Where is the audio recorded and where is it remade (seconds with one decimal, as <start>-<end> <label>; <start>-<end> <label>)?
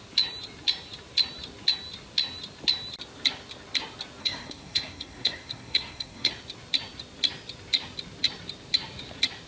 0.0-4.2 recorded; 4.2-6.3 remade; 6.3-9.5 recorded